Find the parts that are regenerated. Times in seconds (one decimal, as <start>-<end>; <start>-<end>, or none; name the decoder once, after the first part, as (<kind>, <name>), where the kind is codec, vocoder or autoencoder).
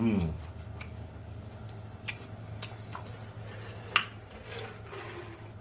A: none